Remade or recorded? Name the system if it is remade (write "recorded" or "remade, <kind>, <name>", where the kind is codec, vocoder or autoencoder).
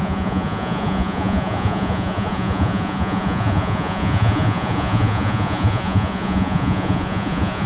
remade, vocoder, Vocos